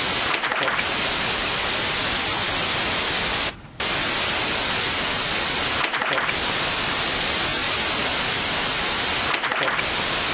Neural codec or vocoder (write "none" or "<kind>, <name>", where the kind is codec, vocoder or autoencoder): none